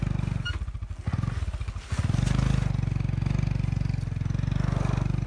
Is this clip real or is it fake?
real